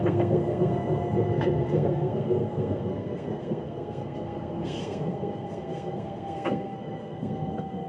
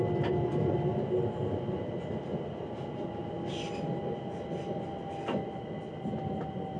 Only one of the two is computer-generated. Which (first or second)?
first